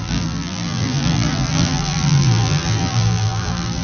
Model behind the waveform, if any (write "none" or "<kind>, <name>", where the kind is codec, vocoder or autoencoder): vocoder, BigVGAN v2